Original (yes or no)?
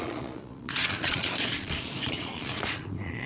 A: no